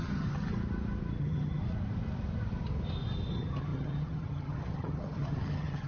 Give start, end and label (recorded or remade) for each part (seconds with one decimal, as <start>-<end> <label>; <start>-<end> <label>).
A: 0.0-0.6 remade; 0.6-1.2 recorded; 1.2-1.6 remade; 1.6-3.3 recorded; 3.3-5.9 remade